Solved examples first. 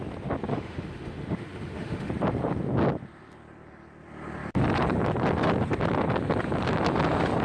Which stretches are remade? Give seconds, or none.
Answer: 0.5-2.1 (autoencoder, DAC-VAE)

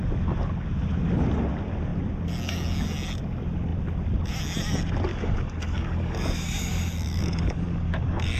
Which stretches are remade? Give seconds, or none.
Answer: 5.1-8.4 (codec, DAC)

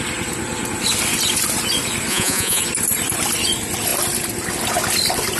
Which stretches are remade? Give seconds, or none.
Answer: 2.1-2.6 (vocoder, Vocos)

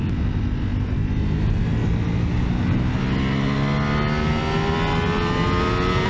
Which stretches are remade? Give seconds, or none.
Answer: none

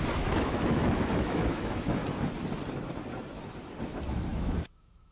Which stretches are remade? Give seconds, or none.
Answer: 0.0-2.0 (autoencoder, DAC-VAE); 3.8-5.1